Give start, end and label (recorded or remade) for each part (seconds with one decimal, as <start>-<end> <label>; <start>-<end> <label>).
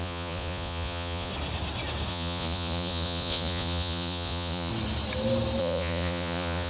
0.0-1.3 remade; 1.3-2.1 recorded; 2.1-4.7 remade; 4.7-5.6 recorded; 5.6-6.7 remade